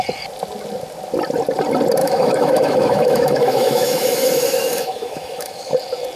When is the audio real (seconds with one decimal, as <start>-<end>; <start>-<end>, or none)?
0.0-2.0; 5.7-6.2